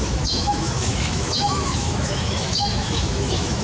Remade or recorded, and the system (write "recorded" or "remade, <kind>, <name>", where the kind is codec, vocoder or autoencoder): remade, autoencoder, DAC-VAE